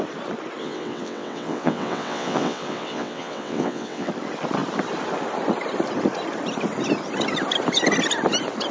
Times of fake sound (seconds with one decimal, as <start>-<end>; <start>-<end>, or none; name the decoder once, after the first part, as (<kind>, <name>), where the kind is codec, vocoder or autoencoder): 0.6-4.1 (vocoder, WaveNeXt)